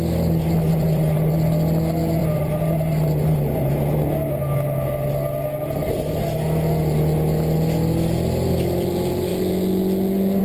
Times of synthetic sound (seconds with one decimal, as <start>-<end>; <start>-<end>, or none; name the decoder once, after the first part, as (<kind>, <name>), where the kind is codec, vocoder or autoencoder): 0.7-1.3 (vocoder, BigVGAN v2); 2.2-3.7